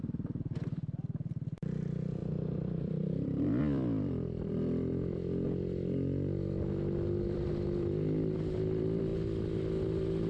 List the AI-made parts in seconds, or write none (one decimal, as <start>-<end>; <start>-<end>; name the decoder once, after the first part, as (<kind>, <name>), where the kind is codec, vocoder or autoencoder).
0.0-4.9 (vocoder, BigVGAN v2); 6.7-9.1